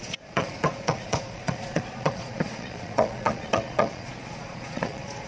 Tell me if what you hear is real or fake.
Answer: fake